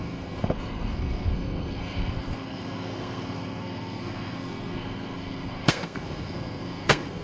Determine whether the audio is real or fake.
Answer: fake